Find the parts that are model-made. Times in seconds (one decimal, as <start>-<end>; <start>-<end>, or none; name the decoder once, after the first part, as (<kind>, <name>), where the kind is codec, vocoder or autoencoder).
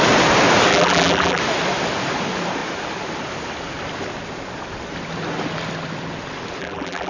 0.7-1.4 (vocoder, BigVGAN v2); 6.6-7.1